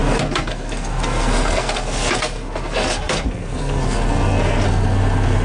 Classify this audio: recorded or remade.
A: remade